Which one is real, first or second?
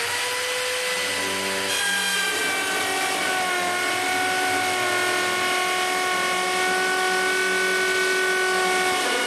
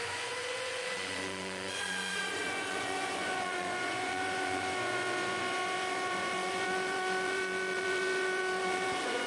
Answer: first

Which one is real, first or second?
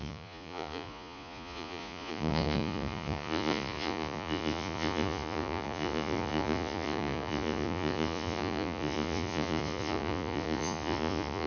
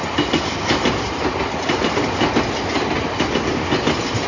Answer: second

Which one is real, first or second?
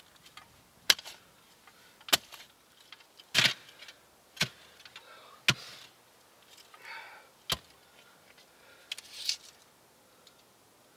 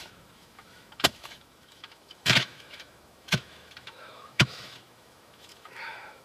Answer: first